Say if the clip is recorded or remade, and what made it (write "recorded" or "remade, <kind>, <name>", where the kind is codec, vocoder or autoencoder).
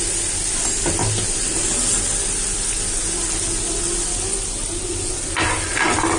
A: recorded